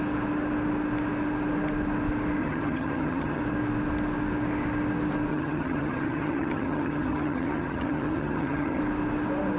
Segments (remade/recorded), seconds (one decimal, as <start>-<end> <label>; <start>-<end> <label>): 0.0-2.4 recorded; 2.4-3.4 remade; 3.4-5.3 recorded; 5.3-8.8 remade; 8.8-9.6 recorded